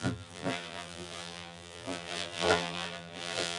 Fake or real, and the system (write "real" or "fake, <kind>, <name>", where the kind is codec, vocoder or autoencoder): fake, vocoder, BigVGAN v2